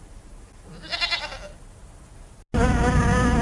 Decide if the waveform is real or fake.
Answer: real